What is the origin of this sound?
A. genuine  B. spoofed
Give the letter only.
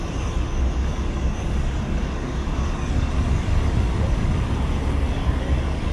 B